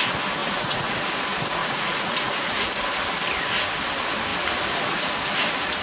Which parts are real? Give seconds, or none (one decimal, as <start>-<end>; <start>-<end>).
0.0-0.4; 1.0-1.6; 2.7-5.8